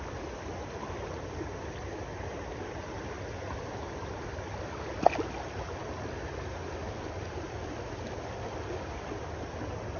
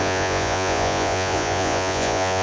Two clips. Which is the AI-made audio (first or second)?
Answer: second